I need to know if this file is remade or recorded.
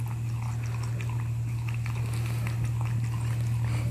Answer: recorded